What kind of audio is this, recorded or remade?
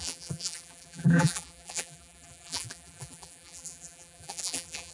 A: remade